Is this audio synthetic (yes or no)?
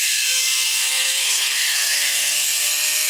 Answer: yes